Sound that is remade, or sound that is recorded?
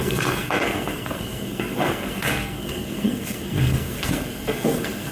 remade